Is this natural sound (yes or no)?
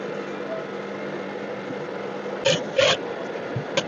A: yes